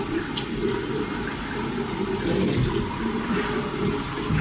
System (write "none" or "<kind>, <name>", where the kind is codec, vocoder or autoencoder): none